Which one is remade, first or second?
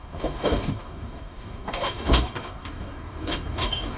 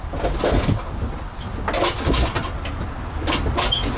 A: first